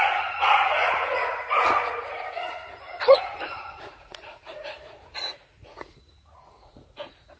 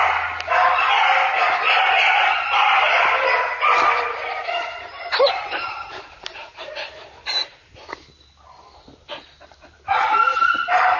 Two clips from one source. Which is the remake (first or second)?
first